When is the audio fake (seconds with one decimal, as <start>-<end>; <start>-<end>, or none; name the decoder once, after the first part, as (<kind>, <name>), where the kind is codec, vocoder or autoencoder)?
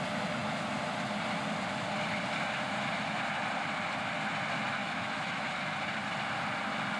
4.8-5.6 (autoencoder, DAC-VAE)